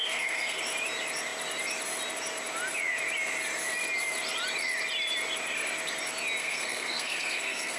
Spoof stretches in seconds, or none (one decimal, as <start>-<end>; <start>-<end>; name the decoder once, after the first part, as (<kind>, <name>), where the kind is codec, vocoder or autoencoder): 0.0-0.6 (codec, SNAC); 6.4-7.8